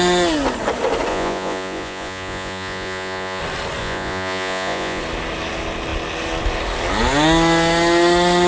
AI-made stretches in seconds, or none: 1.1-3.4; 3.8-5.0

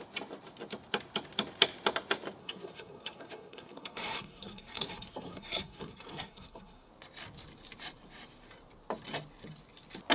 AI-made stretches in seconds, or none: 2.4-6.9